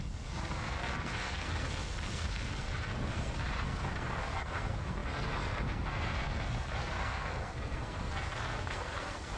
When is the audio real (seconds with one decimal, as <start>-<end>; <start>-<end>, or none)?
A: none